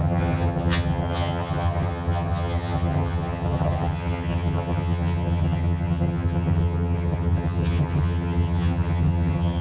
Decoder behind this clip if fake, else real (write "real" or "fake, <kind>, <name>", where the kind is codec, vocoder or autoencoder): fake, vocoder, HiFi-GAN